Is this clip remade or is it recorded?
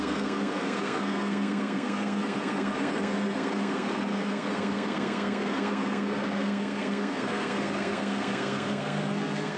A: remade